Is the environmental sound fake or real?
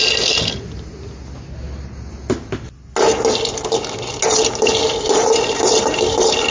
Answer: real